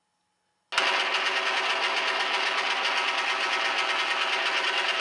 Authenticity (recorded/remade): recorded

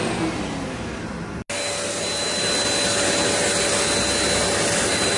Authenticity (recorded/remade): recorded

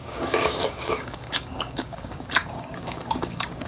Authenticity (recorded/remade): remade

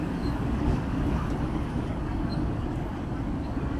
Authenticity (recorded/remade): remade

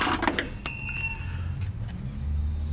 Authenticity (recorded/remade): recorded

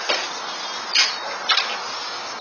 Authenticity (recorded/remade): recorded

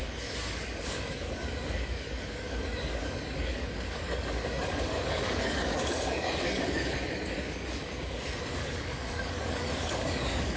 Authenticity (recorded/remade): remade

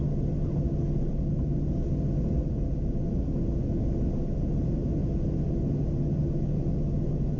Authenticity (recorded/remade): recorded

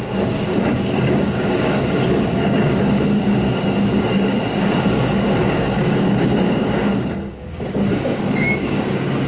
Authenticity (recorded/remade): remade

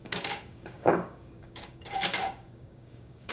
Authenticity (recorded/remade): remade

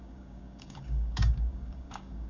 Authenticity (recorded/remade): remade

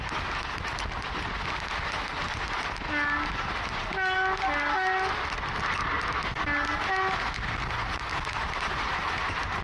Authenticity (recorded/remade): recorded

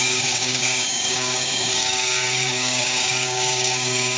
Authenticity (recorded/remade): remade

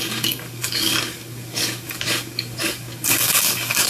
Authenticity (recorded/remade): remade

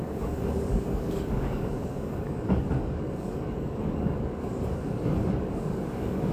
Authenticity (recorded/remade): remade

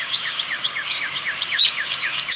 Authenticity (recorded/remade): remade